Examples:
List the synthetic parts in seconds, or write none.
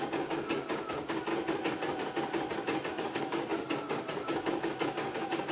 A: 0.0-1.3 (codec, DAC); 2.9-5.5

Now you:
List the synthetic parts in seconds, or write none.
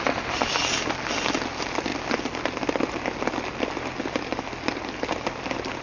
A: none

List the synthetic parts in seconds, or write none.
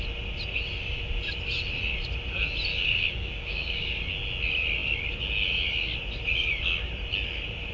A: 2.7-4.0 (codec, DAC)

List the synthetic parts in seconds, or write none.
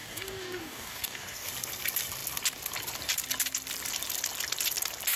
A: 0.0-1.5 (codec, DAC)